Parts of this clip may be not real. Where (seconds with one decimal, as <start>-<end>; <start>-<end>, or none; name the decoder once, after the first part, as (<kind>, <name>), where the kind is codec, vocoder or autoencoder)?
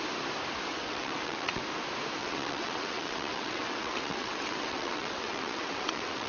0.7-1.6 (vocoder, WaveNeXt); 2.2-6.3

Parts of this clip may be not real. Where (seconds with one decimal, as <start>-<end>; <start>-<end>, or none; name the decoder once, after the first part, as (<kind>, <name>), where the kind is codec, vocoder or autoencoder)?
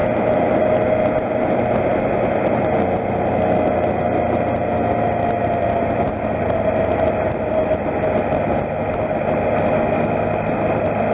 none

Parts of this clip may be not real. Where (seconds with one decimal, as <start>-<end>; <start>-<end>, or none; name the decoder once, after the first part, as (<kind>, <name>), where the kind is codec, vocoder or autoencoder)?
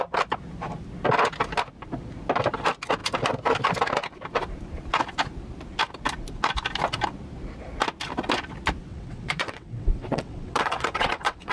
8.9-11.5 (vocoder, WaveNeXt)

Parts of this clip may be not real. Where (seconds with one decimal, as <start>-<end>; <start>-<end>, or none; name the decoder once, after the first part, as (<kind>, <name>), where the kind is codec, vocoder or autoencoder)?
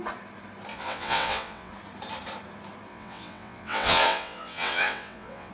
0.7-1.7 (vocoder, WaveNeXt); 2.9-5.5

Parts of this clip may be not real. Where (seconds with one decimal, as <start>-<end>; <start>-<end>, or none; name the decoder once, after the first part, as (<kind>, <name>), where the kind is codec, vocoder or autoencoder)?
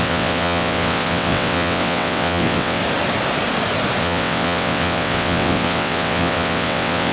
0.0-2.8 (vocoder, WaveNeXt); 4.0-7.1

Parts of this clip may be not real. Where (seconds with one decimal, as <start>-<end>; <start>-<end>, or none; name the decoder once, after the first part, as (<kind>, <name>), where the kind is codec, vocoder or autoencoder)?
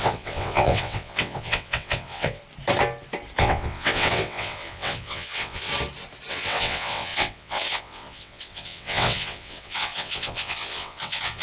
0.0-2.4 (vocoder, WaveNeXt); 3.4-5.7; 6.3-11.4